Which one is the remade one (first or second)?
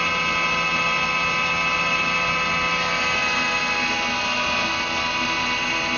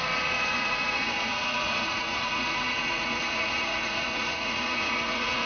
second